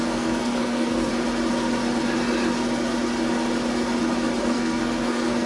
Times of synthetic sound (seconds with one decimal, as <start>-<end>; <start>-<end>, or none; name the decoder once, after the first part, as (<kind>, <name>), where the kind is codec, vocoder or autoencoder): 0.0-1.1 (codec, SNAC); 4.4-5.5